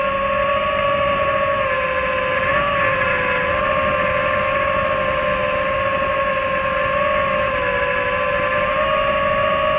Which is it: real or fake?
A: real